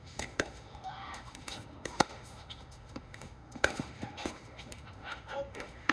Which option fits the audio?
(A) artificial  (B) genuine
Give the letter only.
A